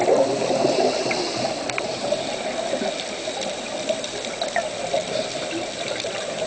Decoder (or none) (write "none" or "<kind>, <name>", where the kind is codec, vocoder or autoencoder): none